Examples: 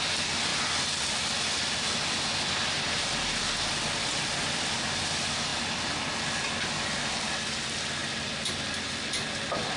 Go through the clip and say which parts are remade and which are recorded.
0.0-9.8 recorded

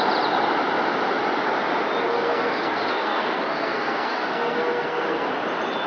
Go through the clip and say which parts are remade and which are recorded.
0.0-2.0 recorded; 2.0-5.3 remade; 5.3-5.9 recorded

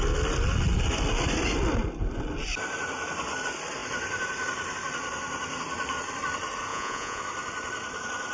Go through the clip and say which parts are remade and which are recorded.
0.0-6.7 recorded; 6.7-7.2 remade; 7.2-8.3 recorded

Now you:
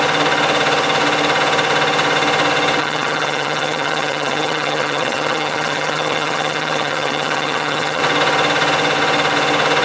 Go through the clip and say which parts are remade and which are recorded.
0.0-2.8 recorded; 2.8-8.0 remade; 8.0-9.8 recorded

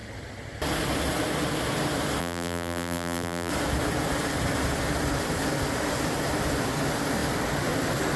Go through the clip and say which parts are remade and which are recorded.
0.0-2.2 recorded; 2.2-3.5 remade; 3.5-8.2 recorded

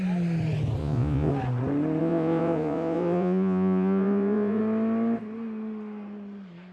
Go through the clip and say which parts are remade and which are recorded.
0.0-0.8 recorded; 0.8-1.3 remade; 1.3-2.0 recorded; 2.0-4.6 remade; 4.6-6.7 recorded